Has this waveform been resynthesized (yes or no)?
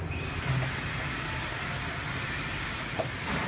no